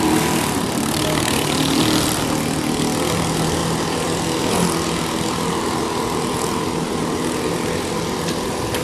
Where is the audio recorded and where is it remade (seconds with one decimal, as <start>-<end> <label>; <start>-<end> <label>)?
0.0-8.8 recorded